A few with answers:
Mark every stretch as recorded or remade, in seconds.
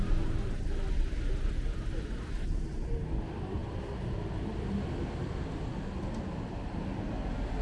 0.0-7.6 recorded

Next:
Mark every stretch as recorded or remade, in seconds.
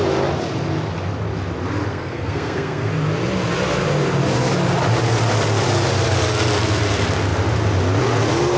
0.0-1.9 recorded; 1.9-2.9 remade; 2.9-8.6 recorded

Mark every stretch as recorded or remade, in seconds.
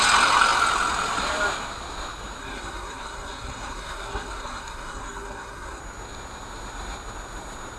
0.0-2.4 recorded; 2.4-5.8 remade; 5.8-7.8 recorded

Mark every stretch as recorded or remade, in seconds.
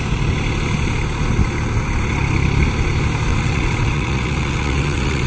0.0-3.3 recorded; 3.3-5.3 remade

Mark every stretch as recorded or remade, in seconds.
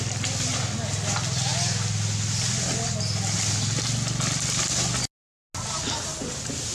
0.0-6.7 recorded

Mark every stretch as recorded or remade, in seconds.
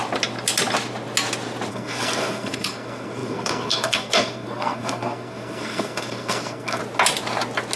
0.0-1.7 recorded; 1.7-6.8 remade; 6.8-7.8 recorded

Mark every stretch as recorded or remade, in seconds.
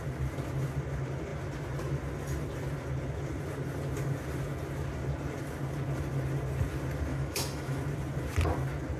0.0-7.1 recorded; 7.1-7.8 remade; 7.8-9.0 recorded